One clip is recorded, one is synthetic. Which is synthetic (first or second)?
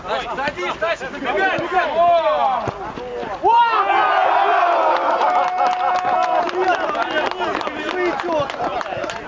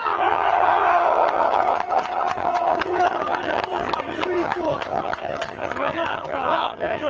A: second